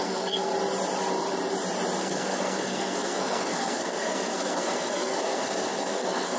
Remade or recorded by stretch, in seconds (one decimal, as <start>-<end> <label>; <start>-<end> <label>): 0.0-0.5 remade; 0.5-2.0 recorded; 2.0-6.4 remade